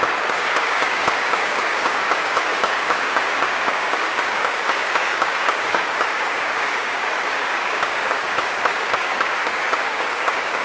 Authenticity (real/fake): fake